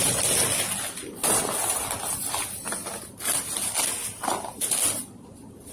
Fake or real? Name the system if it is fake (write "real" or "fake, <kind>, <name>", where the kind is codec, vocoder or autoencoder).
real